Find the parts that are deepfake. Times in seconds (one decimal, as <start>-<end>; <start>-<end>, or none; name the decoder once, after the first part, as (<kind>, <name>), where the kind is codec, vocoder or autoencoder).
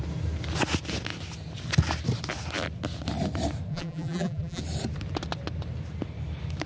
3.7-4.6 (vocoder, BigVGAN v2)